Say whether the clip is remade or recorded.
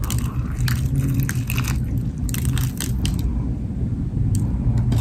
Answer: recorded